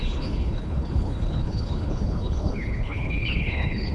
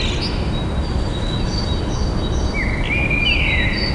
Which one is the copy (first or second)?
first